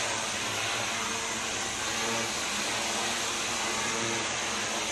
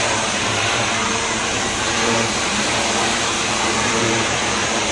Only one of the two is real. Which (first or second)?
first